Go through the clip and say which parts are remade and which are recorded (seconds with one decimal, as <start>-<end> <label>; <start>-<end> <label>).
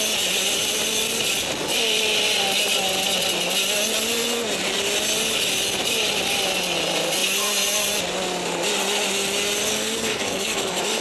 0.0-9.7 recorded; 9.7-11.0 remade